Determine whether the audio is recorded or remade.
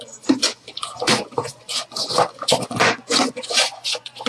remade